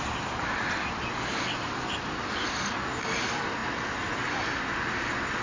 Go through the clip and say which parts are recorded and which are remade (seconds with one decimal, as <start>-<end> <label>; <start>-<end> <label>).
0.0-3.6 recorded; 3.6-4.6 remade; 4.6-5.4 recorded